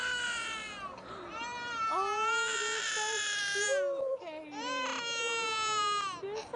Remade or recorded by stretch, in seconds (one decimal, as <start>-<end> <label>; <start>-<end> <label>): 0.0-6.6 recorded